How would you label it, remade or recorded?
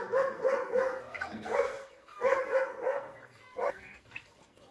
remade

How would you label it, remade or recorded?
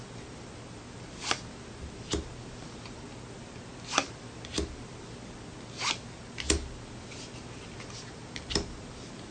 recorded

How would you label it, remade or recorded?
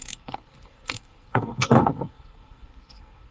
remade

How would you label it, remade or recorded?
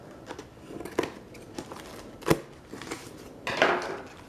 recorded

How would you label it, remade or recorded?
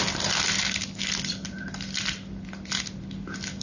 recorded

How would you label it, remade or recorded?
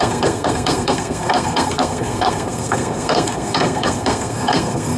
remade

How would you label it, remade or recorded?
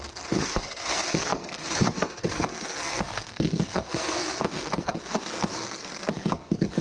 remade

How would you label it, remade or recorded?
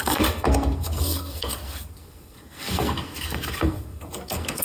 remade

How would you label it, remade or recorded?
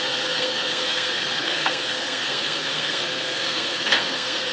remade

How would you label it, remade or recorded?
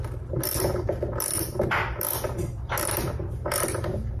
recorded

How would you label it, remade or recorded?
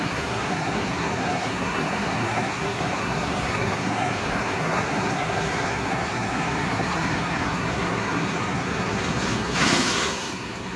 remade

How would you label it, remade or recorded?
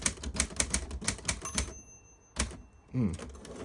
recorded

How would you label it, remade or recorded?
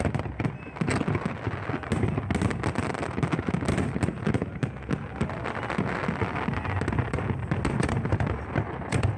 recorded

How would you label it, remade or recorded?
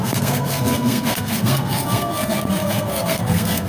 remade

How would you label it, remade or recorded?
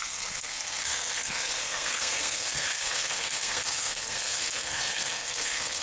remade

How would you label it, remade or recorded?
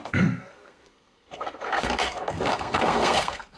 remade